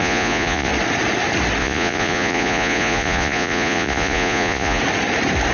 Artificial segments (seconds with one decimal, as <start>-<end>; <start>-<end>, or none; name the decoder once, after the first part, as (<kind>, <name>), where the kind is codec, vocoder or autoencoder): 0.0-0.7 (vocoder, Vocos); 1.6-4.8